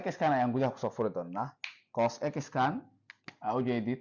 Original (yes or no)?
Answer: yes